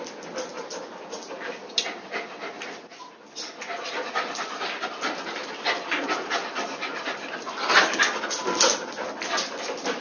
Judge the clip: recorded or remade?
recorded